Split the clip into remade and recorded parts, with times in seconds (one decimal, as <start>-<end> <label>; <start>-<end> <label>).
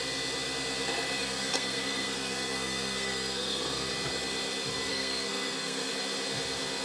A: 0.0-1.2 recorded; 1.2-3.9 remade; 3.9-4.9 recorded; 4.9-5.9 remade; 5.9-6.8 recorded